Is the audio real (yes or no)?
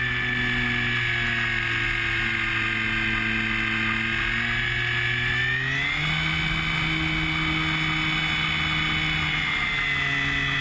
yes